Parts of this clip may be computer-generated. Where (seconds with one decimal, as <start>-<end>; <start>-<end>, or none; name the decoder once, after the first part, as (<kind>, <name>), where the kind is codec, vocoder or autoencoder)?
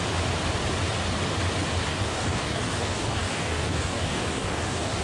1.9-5.0 (codec, DAC)